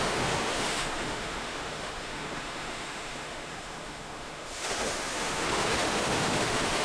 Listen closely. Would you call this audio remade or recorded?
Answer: remade